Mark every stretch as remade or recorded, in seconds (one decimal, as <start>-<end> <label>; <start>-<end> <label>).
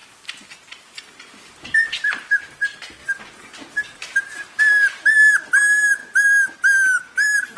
0.0-7.6 recorded